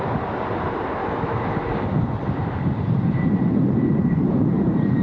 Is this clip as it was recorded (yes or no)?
no